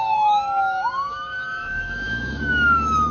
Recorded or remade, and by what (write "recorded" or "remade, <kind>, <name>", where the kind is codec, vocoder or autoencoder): remade, autoencoder, DAC-VAE